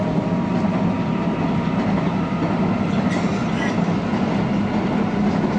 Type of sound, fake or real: real